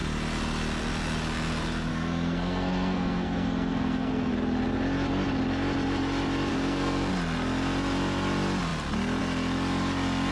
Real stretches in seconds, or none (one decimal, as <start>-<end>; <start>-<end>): 0.0-1.9; 4.3-6.5; 7.1-10.3